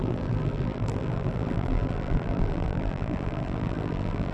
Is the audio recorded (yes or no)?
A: no